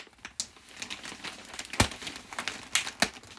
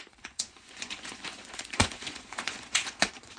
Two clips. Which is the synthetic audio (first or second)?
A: second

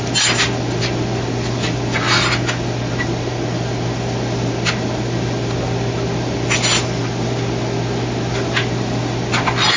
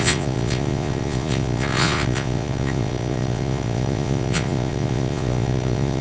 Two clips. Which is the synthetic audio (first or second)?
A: second